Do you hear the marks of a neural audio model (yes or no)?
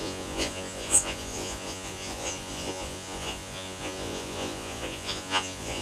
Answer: yes